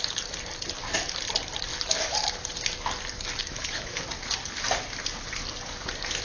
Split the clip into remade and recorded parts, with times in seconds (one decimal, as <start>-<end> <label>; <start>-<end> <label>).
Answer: 0.0-3.4 recorded; 3.4-4.0 remade; 4.0-6.2 recorded